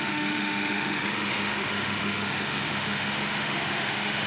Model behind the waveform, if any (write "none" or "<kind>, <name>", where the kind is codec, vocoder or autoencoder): autoencoder, DAC-VAE